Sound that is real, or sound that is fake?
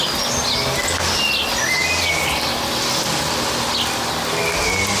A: real